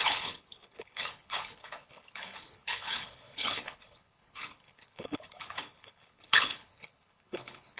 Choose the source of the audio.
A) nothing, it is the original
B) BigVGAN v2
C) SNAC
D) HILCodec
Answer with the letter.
D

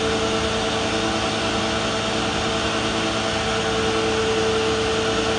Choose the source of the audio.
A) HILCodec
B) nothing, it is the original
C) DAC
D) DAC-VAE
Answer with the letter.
B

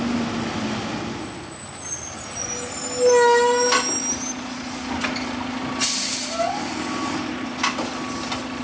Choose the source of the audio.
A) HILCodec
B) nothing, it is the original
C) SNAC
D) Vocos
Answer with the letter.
B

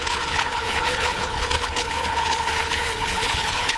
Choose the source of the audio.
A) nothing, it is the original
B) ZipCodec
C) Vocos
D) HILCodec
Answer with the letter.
D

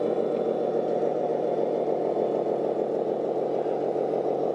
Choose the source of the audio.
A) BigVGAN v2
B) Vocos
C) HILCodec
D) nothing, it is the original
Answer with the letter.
D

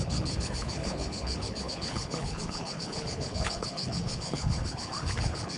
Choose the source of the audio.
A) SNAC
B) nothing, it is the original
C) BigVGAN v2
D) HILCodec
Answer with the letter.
D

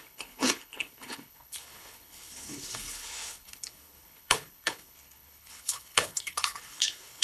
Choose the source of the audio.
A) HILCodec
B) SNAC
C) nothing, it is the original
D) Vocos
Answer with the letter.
A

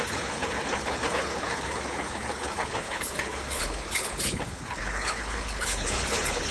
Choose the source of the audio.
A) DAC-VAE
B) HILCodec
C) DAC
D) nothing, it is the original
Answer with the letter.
B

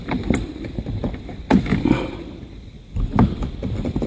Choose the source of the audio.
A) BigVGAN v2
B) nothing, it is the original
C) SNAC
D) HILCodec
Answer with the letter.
B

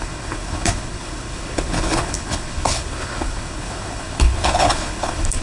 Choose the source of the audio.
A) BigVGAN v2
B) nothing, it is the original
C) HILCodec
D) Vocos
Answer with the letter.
C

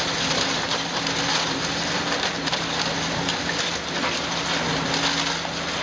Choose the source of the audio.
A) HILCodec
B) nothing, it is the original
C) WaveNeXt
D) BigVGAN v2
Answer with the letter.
B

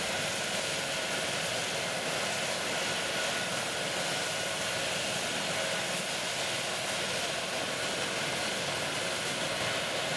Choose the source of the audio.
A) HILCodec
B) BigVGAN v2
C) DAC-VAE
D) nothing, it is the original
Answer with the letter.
D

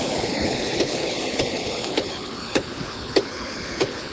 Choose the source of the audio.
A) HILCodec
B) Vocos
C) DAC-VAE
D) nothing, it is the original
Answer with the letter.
A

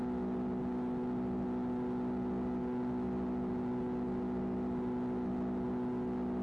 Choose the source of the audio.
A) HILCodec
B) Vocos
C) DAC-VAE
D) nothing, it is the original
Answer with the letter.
D